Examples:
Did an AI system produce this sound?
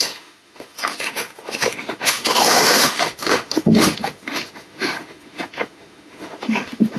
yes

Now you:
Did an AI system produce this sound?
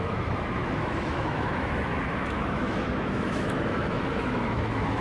yes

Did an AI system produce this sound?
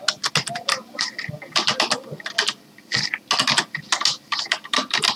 no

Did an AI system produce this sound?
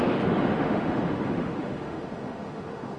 yes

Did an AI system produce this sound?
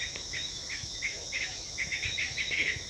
yes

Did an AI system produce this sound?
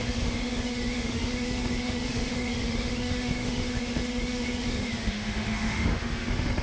yes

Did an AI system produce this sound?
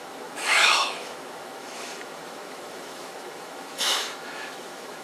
yes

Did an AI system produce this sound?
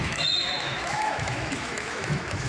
yes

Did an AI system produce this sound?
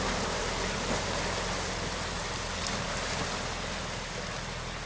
no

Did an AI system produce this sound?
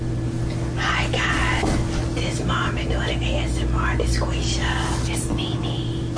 no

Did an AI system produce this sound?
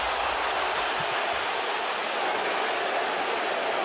no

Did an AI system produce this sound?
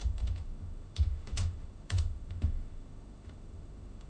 yes